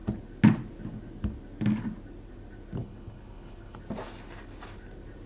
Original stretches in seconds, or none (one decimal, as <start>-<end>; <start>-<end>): 0.0-2.8; 3.8-5.3